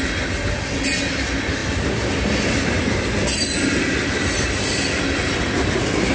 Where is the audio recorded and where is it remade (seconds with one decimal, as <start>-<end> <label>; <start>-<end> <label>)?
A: 0.0-6.1 recorded